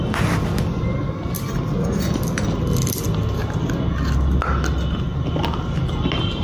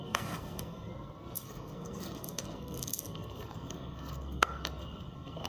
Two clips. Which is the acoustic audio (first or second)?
first